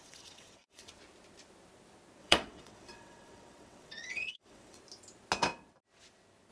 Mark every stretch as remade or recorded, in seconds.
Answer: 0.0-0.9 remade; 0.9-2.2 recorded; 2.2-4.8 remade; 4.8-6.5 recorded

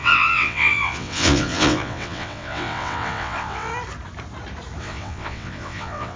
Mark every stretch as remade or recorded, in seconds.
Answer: 0.0-3.7 remade; 3.7-4.8 recorded; 4.8-6.2 remade